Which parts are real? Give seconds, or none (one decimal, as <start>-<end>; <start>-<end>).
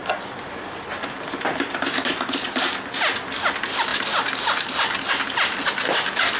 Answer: 0.0-6.4